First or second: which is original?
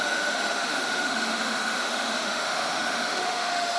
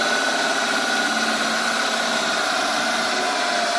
second